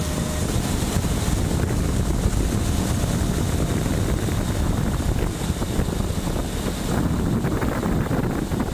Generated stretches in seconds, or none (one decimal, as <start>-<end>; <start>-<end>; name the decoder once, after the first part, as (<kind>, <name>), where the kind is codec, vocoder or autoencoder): none